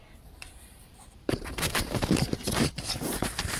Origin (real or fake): fake